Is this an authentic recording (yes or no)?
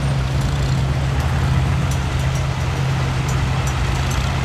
yes